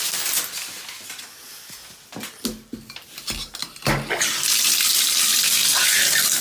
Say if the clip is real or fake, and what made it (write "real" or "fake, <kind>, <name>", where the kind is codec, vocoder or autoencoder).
real